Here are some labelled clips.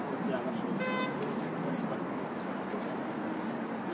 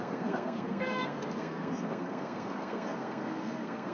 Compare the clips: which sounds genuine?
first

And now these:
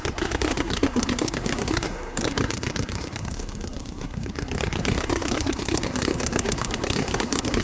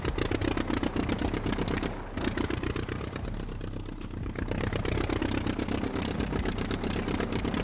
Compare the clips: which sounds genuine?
second